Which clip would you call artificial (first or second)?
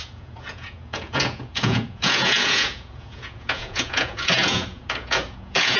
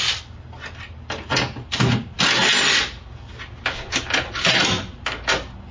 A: first